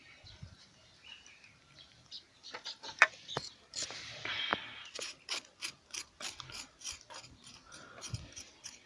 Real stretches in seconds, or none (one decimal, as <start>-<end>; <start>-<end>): 4.5-8.5

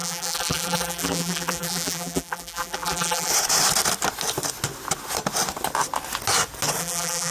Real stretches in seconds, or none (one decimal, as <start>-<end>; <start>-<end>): 3.3-6.8

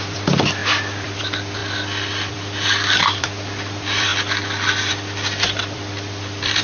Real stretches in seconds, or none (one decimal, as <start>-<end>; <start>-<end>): 1.6-2.3; 4.1-4.9

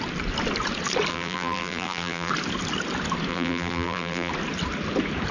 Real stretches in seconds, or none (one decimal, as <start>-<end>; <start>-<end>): 0.0-1.1; 2.3-3.3; 4.3-5.3

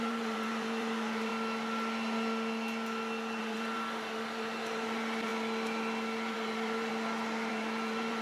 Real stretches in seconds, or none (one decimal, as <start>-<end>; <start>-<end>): 1.3-3.4; 5.3-6.3; 6.9-7.5